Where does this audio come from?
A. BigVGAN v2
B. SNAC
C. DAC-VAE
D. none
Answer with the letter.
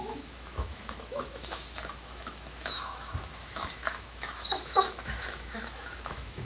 C